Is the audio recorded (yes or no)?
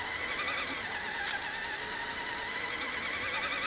yes